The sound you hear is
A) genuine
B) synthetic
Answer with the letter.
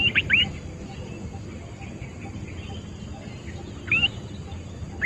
A